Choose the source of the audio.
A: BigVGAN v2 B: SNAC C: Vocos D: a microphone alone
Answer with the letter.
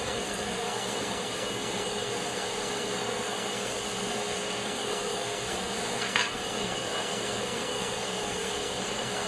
B